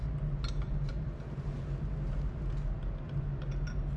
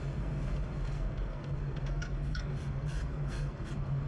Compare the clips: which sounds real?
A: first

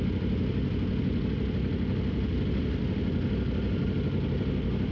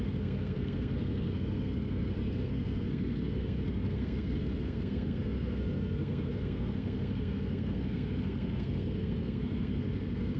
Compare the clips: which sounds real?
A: first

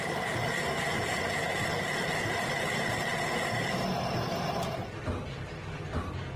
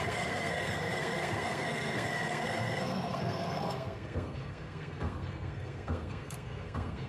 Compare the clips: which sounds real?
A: first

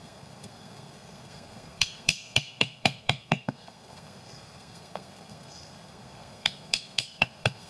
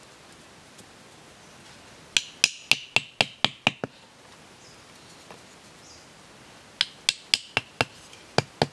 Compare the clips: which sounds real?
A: second